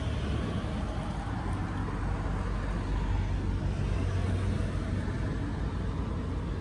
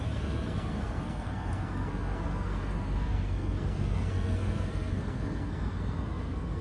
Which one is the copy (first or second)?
second